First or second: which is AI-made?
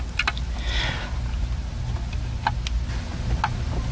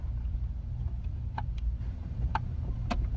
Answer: second